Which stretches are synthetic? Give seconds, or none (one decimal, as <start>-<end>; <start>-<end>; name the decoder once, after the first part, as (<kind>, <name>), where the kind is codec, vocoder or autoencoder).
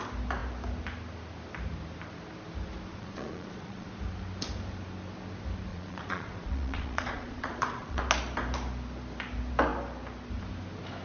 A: 2.9-3.9 (vocoder, Vocos); 5.7-8.0